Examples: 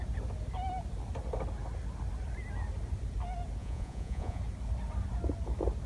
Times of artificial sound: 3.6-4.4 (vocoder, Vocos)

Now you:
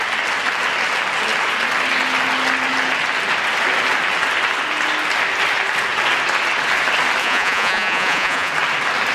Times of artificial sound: 7.2-8.5 (vocoder, Vocos)